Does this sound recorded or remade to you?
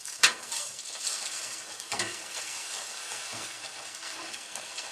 remade